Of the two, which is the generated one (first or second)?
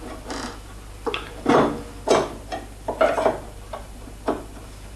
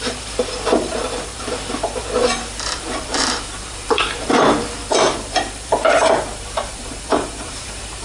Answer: second